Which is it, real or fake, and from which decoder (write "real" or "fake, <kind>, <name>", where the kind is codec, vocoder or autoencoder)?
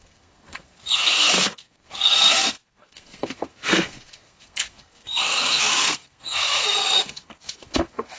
fake, codec, SNAC